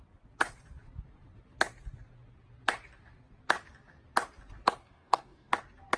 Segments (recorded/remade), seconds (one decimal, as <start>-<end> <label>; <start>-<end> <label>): 0.0-4.8 recorded; 4.8-5.5 remade; 5.5-6.0 recorded